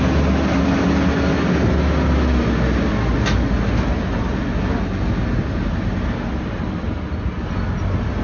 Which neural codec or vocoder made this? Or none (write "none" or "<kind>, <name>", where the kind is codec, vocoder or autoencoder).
none